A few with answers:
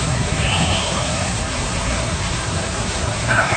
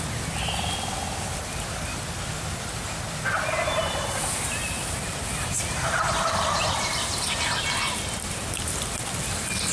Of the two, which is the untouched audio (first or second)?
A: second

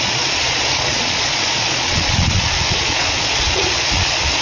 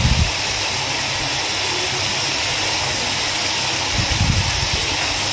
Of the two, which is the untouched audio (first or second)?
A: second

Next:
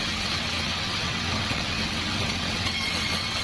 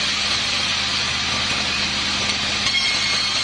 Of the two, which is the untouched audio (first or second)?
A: second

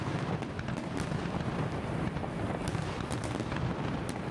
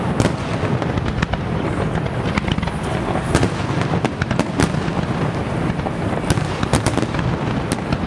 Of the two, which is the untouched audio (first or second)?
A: second